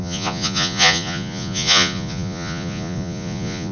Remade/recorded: remade